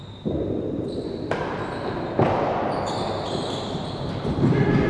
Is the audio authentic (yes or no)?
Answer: yes